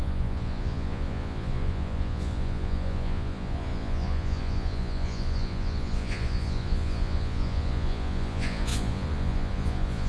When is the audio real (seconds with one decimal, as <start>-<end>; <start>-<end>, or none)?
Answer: none